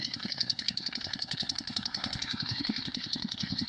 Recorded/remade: remade